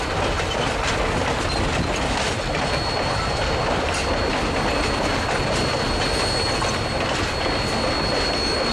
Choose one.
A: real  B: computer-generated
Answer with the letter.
A